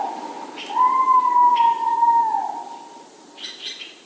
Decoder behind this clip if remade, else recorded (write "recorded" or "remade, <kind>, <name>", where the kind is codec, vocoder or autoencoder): recorded